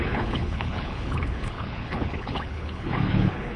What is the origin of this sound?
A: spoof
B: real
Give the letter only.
A